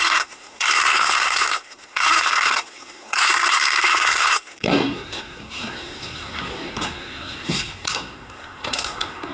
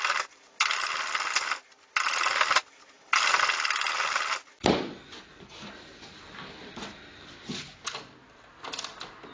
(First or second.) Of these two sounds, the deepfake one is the first